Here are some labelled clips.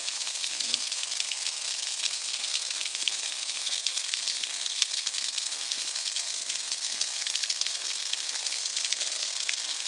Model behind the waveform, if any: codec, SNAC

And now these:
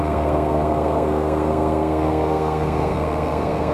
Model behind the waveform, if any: codec, SNAC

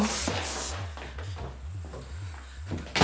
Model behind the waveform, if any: none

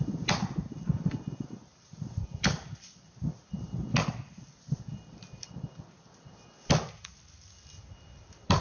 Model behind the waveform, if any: none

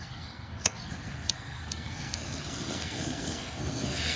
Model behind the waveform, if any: codec, SNAC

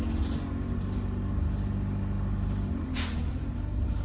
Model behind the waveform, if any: none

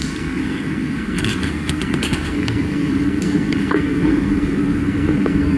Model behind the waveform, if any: codec, SNAC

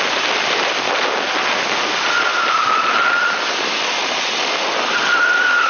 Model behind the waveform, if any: none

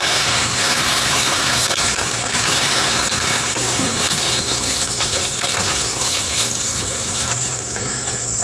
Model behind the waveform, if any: codec, SNAC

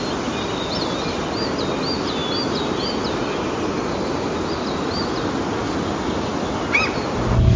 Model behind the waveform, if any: none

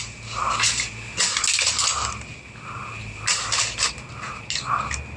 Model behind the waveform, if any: none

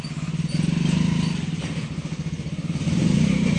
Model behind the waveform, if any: none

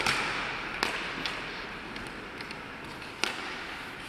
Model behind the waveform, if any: none